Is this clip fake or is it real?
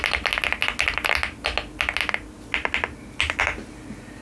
real